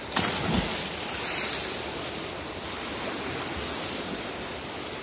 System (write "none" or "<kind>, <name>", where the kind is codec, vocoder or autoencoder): none